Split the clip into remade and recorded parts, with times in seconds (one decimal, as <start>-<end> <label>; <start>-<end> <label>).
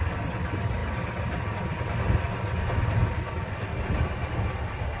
0.0-5.0 recorded